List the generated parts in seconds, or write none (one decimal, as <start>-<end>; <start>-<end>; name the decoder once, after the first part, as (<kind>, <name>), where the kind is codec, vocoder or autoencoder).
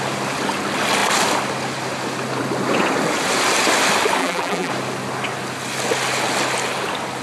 4.2-4.7 (vocoder, BigVGAN v2)